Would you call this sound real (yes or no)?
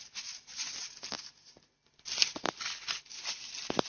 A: yes